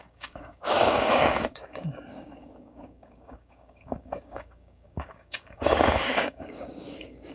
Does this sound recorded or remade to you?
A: remade